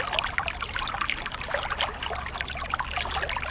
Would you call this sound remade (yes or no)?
no